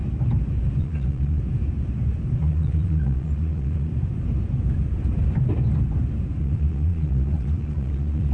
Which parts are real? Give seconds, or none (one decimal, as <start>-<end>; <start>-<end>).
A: 0.0-0.8; 1.4-2.4; 3.9-6.4